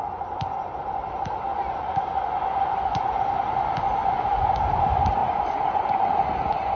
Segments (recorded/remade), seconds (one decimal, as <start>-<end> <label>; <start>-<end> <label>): 0.0-1.5 recorded; 1.5-3.1 remade; 3.1-4.0 recorded; 4.0-4.5 remade; 4.5-5.2 recorded; 5.2-6.8 remade